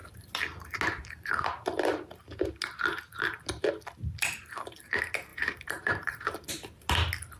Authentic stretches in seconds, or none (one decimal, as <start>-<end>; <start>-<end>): 0.0-5.3; 6.5-7.4